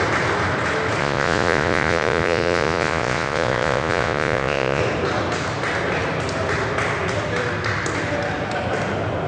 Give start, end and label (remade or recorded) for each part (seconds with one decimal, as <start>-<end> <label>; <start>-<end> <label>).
0.0-1.0 recorded; 1.0-4.8 remade; 4.8-9.3 recorded